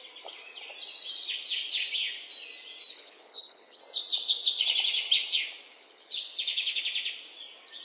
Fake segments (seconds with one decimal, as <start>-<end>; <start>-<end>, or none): 2.9-3.8; 5.7-6.8